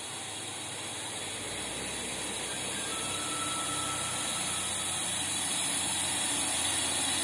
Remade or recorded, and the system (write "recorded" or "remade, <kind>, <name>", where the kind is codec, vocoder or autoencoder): recorded